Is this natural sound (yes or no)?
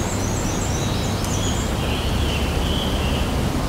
yes